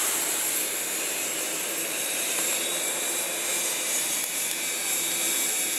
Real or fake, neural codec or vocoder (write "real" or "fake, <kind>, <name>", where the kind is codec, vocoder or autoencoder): fake, vocoder, BigVGAN v2